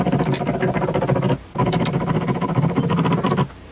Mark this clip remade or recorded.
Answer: recorded